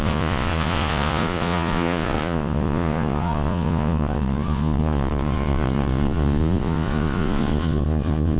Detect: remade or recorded remade